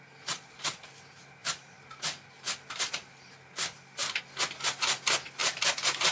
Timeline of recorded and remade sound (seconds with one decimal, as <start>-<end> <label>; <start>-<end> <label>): 0.0-1.4 recorded; 1.4-4.2 remade; 4.2-6.1 recorded